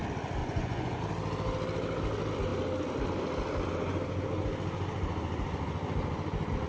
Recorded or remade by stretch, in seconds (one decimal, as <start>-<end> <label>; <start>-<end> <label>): 0.0-0.4 recorded; 0.4-1.0 remade; 1.0-6.7 recorded